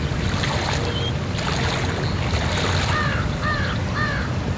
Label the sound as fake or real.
real